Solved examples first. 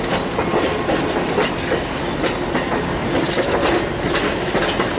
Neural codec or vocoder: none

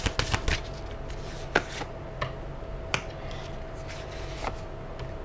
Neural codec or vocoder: none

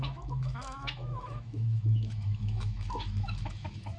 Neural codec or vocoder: autoencoder, DAC-VAE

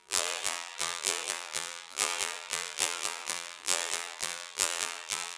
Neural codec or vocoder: vocoder, BigVGAN v2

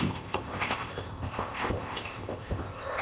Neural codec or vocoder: codec, ZipCodec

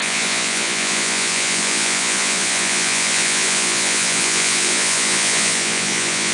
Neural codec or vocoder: vocoder, Vocos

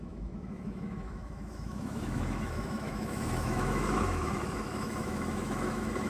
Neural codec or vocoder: autoencoder, DAC-VAE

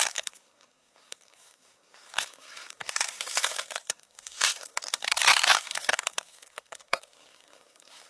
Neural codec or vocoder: codec, SNAC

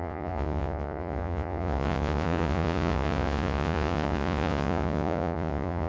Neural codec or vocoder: vocoder, Vocos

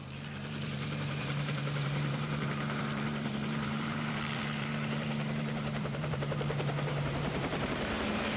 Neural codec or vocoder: vocoder, BigVGAN v2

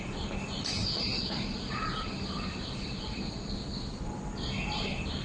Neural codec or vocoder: none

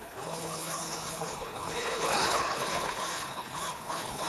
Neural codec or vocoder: codec, HILCodec